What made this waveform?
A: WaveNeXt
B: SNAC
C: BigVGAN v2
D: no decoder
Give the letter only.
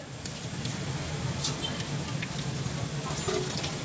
D